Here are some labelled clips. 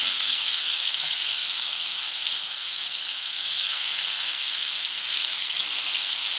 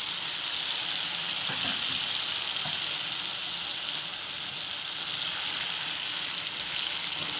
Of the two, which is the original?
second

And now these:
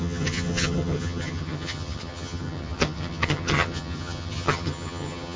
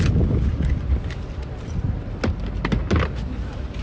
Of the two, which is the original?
second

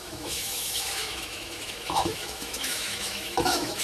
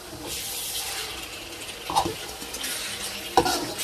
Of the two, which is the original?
second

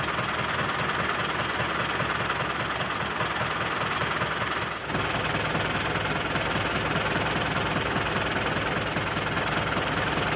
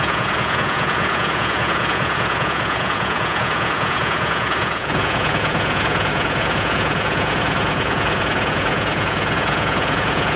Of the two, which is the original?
first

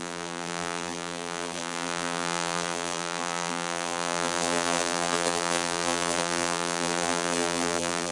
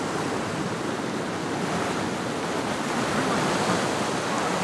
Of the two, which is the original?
second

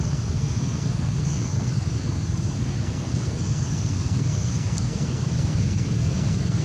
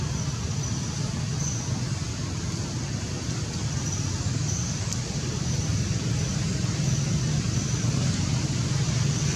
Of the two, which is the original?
second